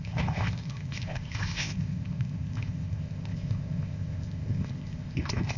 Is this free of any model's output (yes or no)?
no